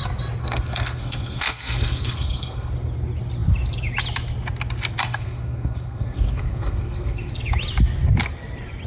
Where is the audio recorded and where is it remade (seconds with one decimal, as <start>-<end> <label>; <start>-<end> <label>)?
0.0-0.4 recorded; 0.4-2.7 remade; 2.7-5.0 recorded; 5.0-7.3 remade; 7.3-8.9 recorded